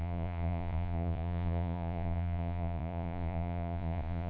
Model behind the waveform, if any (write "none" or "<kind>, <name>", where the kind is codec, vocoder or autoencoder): vocoder, Vocos